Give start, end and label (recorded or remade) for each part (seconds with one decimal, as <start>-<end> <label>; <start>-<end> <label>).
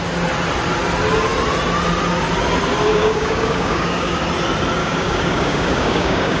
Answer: 0.0-2.9 recorded; 2.9-4.2 remade; 4.2-4.8 recorded; 4.8-6.4 remade